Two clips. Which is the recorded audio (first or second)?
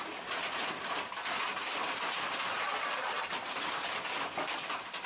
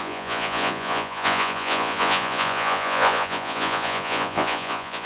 first